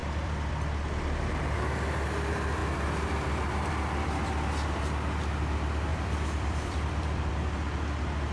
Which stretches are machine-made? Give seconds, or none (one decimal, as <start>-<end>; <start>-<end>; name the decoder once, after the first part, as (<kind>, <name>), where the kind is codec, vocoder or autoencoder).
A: 0.0-0.5 (vocoder, BigVGAN v2); 2.6-3.7; 5.9-7.3